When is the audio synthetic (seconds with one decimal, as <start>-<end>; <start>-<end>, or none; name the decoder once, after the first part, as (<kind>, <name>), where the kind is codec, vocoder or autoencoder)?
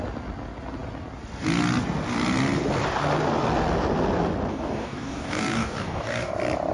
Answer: 4.5-6.3 (codec, DAC)